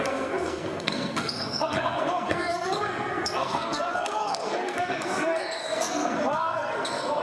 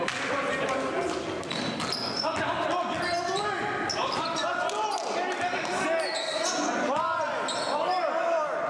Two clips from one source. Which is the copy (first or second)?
first